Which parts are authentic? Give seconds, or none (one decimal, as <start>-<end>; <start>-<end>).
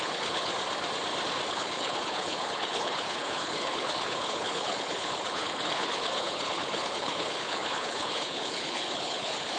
0.5-1.5